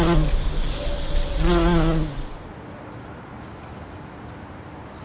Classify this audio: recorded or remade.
recorded